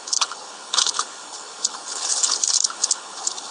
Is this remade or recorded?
remade